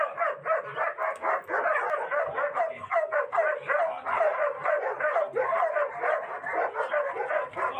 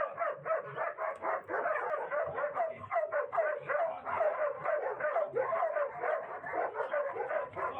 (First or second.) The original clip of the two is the first